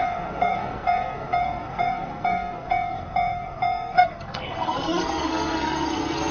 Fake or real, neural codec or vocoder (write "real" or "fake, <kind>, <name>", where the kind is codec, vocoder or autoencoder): fake, codec, SNAC